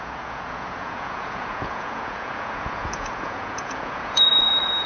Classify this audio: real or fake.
fake